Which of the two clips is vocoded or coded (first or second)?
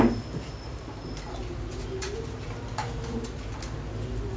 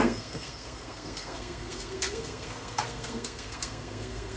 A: second